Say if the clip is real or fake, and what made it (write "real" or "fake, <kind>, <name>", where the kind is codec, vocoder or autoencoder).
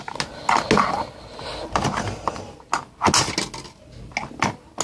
real